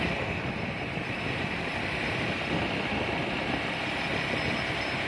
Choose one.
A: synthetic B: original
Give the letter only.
B